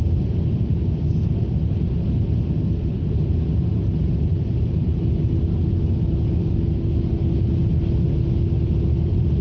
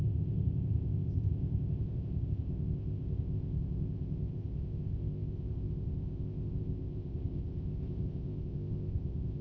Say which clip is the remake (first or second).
second